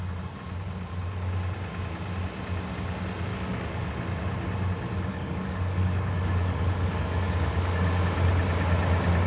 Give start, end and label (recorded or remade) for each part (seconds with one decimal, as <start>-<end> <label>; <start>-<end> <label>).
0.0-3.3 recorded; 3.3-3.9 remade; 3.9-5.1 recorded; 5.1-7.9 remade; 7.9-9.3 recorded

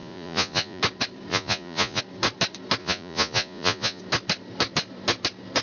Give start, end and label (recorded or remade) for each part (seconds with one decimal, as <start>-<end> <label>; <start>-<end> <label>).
0.0-0.8 remade; 0.8-1.3 recorded; 1.3-2.0 remade; 2.0-2.8 recorded; 2.8-4.0 remade; 4.0-5.6 recorded

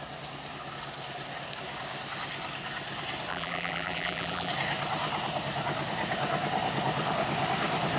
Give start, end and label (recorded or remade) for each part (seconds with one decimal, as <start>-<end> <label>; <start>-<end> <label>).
0.0-3.3 recorded; 3.3-4.5 remade; 4.5-8.0 recorded